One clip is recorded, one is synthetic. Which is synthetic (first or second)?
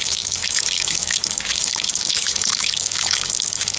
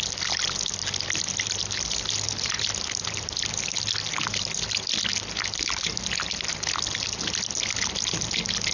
first